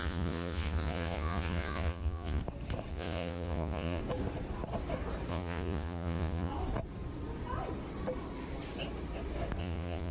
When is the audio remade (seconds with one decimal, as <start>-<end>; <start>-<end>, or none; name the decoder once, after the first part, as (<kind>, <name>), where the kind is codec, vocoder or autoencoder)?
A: 0.0-2.4 (vocoder, Vocos); 2.9-4.0; 5.3-6.5; 9.6-10.1